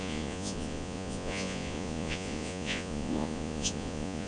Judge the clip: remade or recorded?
remade